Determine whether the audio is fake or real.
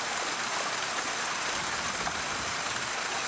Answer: real